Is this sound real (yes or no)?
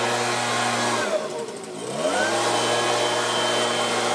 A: yes